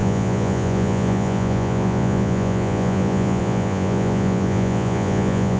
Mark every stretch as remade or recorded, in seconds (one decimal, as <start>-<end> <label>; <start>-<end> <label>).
0.0-5.6 remade

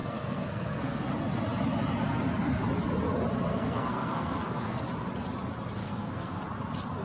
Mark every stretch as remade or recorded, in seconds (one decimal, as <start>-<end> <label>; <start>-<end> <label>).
0.0-1.1 remade; 1.1-3.5 recorded; 3.5-4.8 remade; 4.8-5.8 recorded; 5.8-6.4 remade; 6.4-7.0 recorded

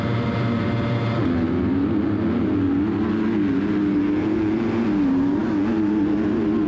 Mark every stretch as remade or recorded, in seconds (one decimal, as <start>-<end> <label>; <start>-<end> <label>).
0.0-6.7 recorded